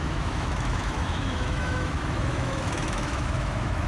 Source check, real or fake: fake